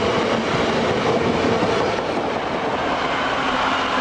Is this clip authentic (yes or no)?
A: yes